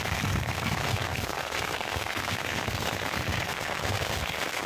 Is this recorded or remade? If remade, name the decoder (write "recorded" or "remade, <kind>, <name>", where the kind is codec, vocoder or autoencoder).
remade, codec, SNAC